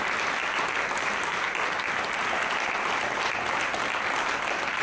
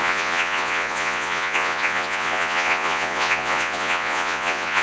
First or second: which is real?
first